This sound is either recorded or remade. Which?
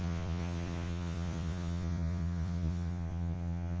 remade